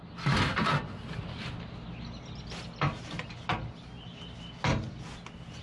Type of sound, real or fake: real